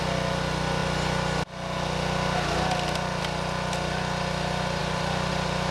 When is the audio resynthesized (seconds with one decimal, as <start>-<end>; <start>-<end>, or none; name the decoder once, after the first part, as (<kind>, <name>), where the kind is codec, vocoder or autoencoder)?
4.8-5.3 (vocoder, BigVGAN v2)